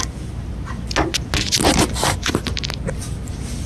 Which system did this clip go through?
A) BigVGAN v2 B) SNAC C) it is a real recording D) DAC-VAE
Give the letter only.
C